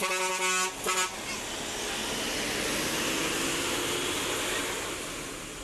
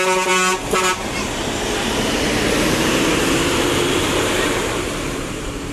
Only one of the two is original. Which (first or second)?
first